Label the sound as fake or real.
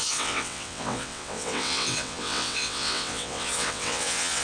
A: fake